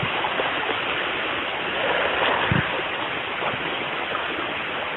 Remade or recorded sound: recorded